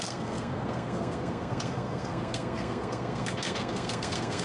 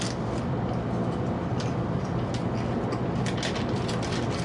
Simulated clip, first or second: first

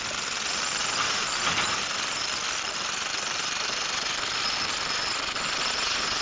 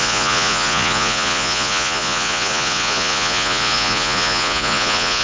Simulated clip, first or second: second